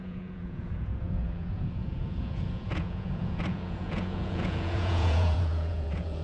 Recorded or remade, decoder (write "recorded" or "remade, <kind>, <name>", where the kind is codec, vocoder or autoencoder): remade, vocoder, Vocos